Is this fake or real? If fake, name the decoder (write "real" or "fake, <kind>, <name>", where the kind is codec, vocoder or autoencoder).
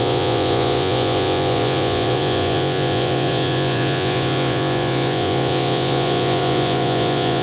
fake, vocoder, Vocos